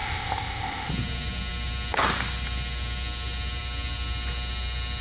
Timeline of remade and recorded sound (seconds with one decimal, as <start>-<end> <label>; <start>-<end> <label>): 0.0-0.9 remade; 0.9-5.0 recorded